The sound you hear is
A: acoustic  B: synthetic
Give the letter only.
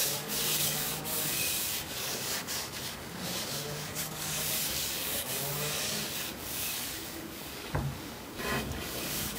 B